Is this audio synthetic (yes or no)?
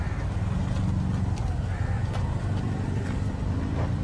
no